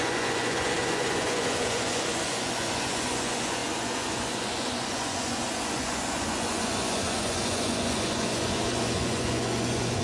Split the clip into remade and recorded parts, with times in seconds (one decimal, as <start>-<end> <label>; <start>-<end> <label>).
0.0-10.0 remade